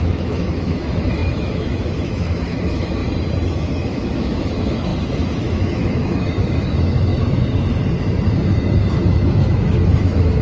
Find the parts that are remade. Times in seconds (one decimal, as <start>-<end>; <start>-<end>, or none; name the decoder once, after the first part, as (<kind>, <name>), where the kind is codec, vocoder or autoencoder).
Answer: 0.0-3.0 (autoencoder, DAC-VAE); 3.5-7.1; 8.0-10.4